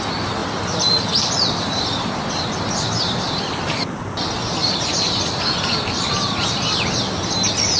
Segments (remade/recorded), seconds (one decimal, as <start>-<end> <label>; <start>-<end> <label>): 0.0-0.4 recorded; 0.4-4.1 remade; 4.1-4.6 recorded; 4.6-5.8 remade; 5.8-7.8 recorded